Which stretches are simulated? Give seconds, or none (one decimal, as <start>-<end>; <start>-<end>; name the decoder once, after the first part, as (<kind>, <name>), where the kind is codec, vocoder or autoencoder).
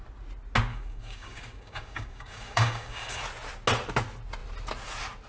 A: 0.7-3.2 (codec, DAC)